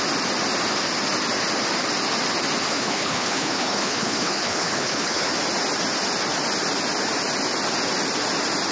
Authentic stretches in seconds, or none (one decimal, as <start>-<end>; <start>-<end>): 0.0-2.7; 5.3-8.7